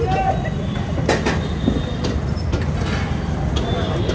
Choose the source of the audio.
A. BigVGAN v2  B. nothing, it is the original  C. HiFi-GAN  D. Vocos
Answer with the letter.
B